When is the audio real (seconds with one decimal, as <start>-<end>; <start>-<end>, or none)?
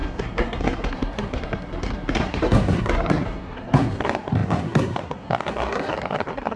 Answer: none